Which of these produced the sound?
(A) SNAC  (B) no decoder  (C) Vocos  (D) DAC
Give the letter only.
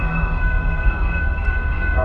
A